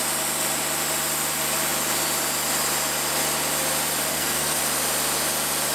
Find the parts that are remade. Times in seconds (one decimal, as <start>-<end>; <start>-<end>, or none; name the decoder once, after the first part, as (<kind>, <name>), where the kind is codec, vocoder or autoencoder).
4.1-4.6 (codec, SNAC)

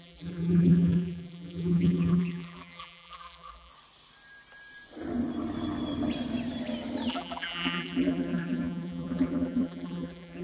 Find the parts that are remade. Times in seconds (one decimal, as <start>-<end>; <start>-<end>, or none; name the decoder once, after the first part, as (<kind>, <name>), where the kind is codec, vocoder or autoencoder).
0.0-3.7 (vocoder, BigVGAN v2); 7.1-10.4

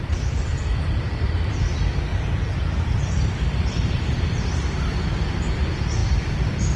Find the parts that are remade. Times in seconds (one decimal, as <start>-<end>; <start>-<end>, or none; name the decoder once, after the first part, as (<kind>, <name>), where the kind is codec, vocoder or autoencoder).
0.0-2.1 (vocoder, BigVGAN v2); 2.7-6.8

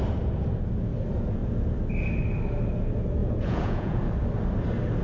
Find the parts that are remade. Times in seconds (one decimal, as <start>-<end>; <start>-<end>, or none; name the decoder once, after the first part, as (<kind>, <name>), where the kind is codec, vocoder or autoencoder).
3.2-4.1 (vocoder, Vocos)